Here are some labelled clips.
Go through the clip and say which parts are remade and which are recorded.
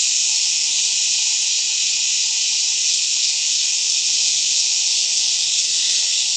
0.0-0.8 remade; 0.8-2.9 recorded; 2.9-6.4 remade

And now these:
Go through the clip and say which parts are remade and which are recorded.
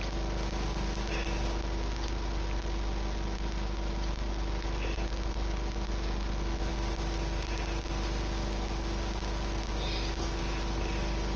0.0-11.4 recorded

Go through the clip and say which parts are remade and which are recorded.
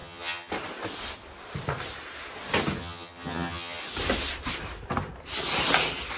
0.0-0.5 remade; 0.5-2.8 recorded; 2.8-3.8 remade; 3.8-6.2 recorded